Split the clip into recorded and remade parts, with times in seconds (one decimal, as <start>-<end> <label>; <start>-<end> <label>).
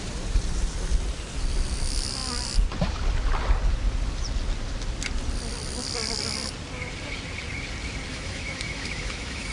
0.0-8.1 recorded; 8.1-9.5 remade